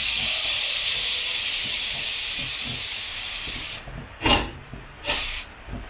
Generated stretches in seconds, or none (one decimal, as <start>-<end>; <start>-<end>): 0.0-5.9